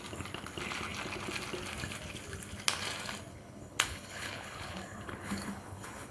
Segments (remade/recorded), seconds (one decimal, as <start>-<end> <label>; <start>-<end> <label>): 0.0-3.3 recorded; 3.3-6.1 remade